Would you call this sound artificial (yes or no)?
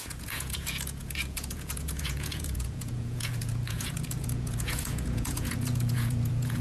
yes